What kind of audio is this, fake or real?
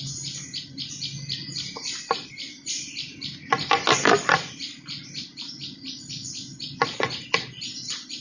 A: real